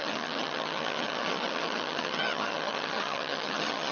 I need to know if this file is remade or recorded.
remade